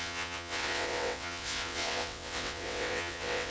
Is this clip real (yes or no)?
no